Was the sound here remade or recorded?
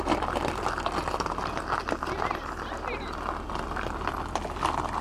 recorded